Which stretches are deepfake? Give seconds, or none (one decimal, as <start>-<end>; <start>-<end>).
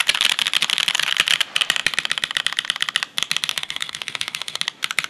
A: 3.5-4.6